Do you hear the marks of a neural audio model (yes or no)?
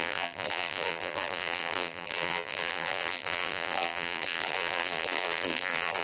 yes